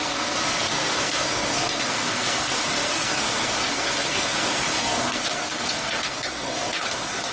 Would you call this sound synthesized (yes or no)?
yes